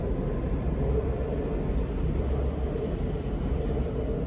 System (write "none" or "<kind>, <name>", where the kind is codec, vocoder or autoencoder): none